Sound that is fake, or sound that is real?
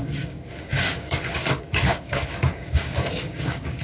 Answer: fake